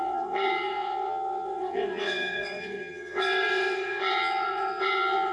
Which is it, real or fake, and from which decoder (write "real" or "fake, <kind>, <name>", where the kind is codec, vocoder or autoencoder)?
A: fake, vocoder, WaveNeXt